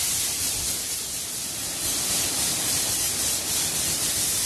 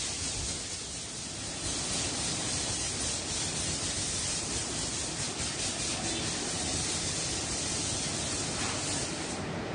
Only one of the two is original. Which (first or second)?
second